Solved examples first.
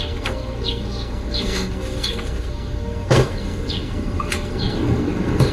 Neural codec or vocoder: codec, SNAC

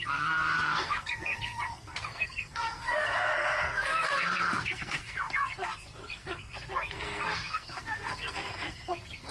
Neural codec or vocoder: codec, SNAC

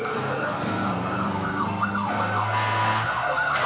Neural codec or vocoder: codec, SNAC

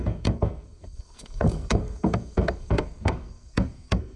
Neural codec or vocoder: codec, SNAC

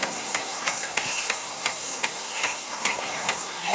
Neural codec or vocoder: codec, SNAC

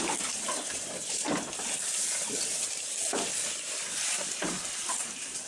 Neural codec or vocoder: none